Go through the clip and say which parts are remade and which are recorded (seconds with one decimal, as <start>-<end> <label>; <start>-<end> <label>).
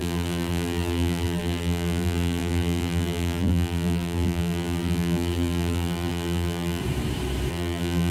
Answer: 0.0-6.8 remade; 6.8-7.5 recorded; 7.5-8.1 remade